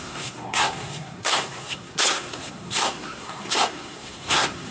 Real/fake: fake